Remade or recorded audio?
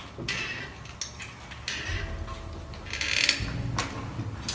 recorded